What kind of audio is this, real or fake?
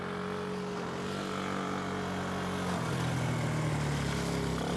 real